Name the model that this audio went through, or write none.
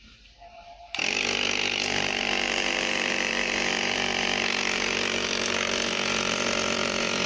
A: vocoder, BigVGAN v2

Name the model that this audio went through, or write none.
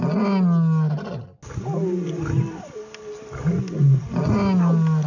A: none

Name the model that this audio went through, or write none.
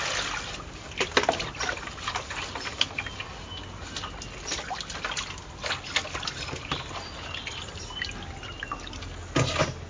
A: none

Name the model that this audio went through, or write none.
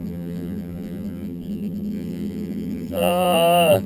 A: vocoder, BigVGAN v2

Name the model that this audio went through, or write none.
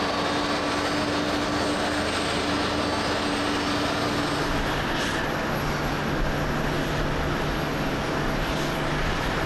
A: none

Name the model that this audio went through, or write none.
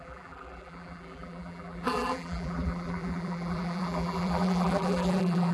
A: vocoder, BigVGAN v2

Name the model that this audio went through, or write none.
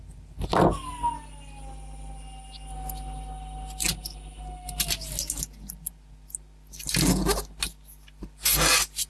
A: none